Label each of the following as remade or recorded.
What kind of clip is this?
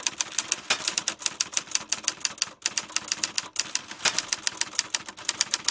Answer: recorded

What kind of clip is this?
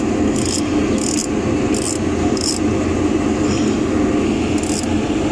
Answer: recorded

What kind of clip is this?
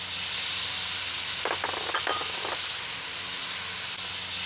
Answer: recorded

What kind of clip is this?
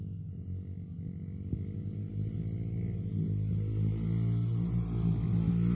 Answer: recorded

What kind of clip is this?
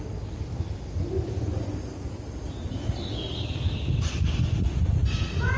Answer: recorded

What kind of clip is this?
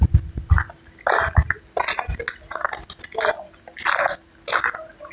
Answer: recorded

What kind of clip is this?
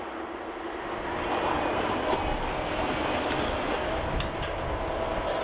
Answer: recorded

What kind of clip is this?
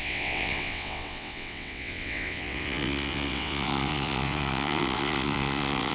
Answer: remade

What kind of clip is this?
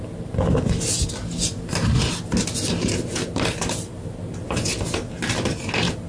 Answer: recorded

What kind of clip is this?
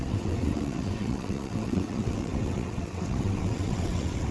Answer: remade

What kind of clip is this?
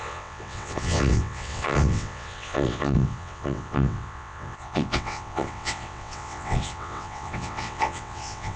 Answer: remade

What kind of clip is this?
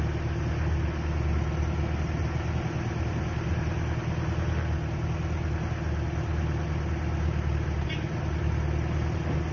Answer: recorded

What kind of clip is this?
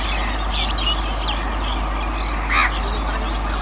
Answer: recorded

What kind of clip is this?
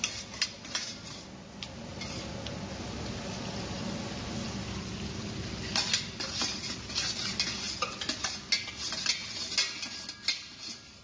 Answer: recorded